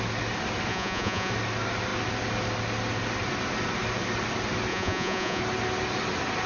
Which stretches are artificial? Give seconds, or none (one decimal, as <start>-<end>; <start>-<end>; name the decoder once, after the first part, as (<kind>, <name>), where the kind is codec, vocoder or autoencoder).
0.7-1.3 (vocoder, Vocos); 4.7-5.4